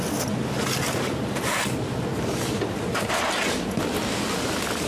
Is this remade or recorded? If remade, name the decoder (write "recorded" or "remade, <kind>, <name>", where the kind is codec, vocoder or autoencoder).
recorded